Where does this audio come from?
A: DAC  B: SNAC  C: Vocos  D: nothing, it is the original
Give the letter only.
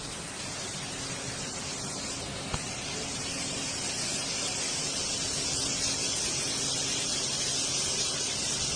D